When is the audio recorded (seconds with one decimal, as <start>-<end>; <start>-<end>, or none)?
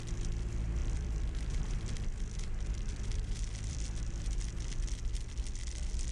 0.0-0.8; 4.5-6.1